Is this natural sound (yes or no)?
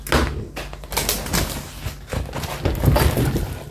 yes